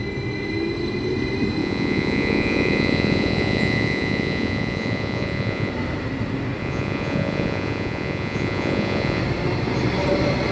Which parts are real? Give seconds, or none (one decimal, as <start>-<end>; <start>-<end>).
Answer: 0.0-1.6; 5.7-6.6; 9.2-10.5